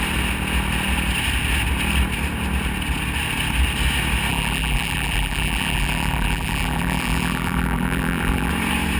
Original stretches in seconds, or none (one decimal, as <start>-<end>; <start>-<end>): 0.0-4.3; 8.5-9.0